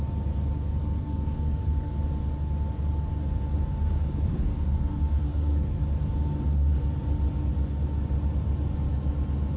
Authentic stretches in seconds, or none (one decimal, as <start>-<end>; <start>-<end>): 0.0-0.8; 1.9-4.3; 5.8-9.6

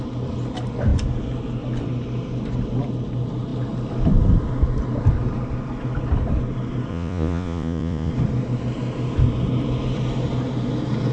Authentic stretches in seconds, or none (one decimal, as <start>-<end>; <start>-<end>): 0.0-6.9; 8.1-11.1

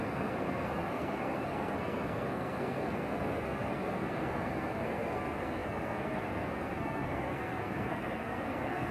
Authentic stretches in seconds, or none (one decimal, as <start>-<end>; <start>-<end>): none

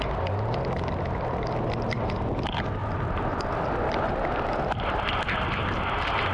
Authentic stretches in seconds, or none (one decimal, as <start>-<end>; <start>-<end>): 0.0-2.8; 4.1-6.3